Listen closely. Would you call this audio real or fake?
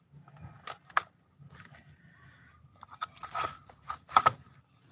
real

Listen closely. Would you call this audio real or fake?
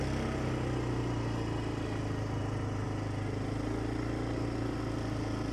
real